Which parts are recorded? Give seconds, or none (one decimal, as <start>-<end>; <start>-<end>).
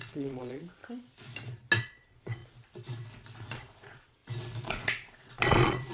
0.8-1.8; 2.4-3.4; 4.2-4.7